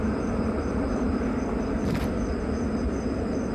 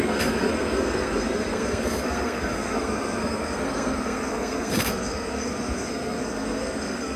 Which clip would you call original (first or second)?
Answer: first